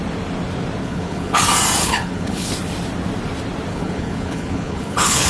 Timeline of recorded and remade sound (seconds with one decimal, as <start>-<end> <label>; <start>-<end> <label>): 0.0-0.8 recorded; 0.8-1.4 remade; 1.4-1.8 recorded; 1.8-2.5 remade; 2.5-3.7 recorded; 3.7-5.3 remade

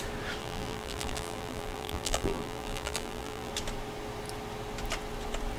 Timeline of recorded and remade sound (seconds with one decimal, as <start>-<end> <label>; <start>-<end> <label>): 0.0-0.4 recorded; 0.4-3.5 remade; 3.5-5.6 recorded